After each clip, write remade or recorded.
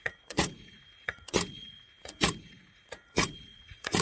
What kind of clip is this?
remade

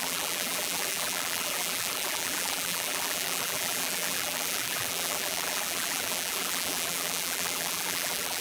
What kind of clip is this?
remade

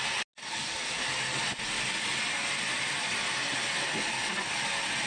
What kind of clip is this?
recorded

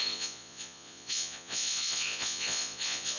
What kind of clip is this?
remade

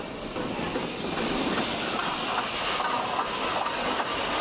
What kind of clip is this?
recorded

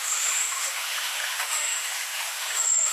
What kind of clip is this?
remade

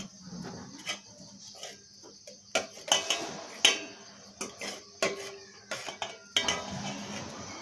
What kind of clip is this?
recorded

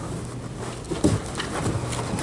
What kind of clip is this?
recorded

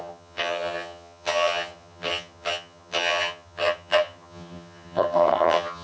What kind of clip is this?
remade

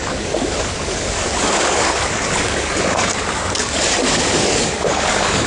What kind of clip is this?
remade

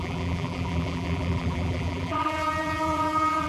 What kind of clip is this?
remade